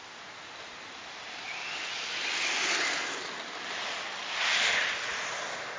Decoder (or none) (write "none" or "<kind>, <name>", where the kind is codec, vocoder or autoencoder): none